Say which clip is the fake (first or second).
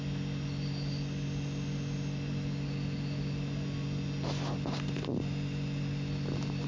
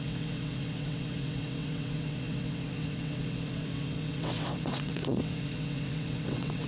second